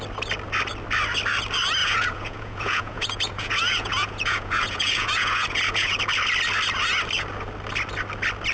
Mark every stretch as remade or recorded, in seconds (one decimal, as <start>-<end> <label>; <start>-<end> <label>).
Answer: 0.0-1.8 recorded; 1.8-6.0 remade; 6.0-8.5 recorded